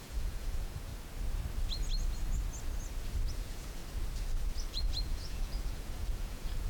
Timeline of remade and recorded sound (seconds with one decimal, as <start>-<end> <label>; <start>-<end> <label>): 0.0-0.9 remade; 0.9-3.3 recorded; 3.3-3.8 remade; 3.8-4.7 recorded; 4.7-6.7 remade